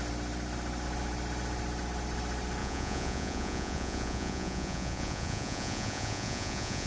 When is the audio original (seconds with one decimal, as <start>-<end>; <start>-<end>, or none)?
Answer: 0.0-2.6